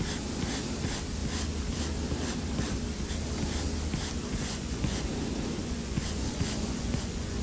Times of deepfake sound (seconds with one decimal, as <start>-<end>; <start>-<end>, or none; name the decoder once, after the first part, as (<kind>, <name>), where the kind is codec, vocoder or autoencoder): 4.3-5.1 (vocoder, Vocos); 5.6-7.4